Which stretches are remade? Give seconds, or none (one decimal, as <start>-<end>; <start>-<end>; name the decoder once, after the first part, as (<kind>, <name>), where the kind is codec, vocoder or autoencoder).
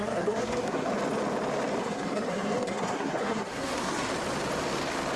0.0-0.9 (codec, SNAC); 1.8-4.1